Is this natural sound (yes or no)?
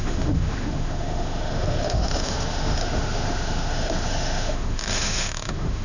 no